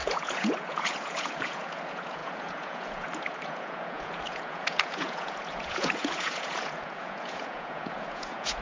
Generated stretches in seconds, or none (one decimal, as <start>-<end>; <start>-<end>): 0.0-8.6